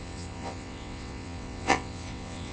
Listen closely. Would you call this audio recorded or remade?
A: remade